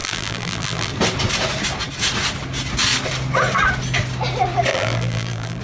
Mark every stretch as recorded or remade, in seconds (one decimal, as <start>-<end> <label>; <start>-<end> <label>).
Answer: 0.0-0.9 remade; 0.9-4.7 recorded; 4.7-5.6 remade